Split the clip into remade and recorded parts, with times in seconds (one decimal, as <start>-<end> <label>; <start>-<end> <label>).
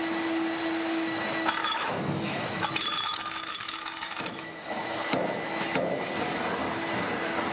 0.0-1.6 recorded; 1.6-6.1 remade; 6.1-7.5 recorded